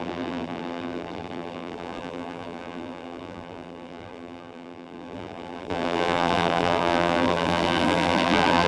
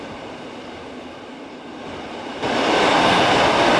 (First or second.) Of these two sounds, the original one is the second